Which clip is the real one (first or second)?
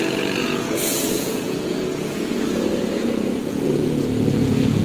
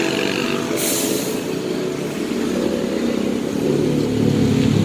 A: second